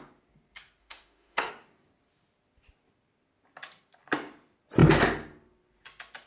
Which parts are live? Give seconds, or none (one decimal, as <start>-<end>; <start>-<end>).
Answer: 0.0-0.8; 1.5-6.3